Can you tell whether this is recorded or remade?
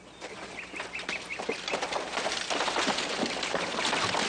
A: recorded